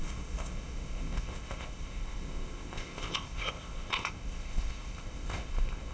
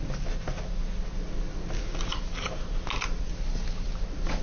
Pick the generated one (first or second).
first